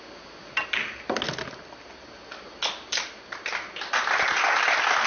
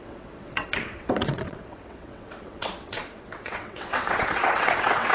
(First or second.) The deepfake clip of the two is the second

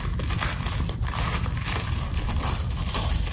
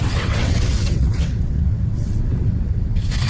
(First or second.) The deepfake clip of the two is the second